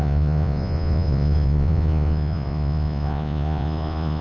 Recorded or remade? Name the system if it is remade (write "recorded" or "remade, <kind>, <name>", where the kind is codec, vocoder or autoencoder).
remade, vocoder, Vocos